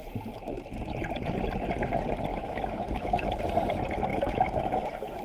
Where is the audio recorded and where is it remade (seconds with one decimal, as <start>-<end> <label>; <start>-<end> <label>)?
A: 0.0-2.3 recorded; 2.3-3.3 remade; 3.3-4.1 recorded; 4.1-5.2 remade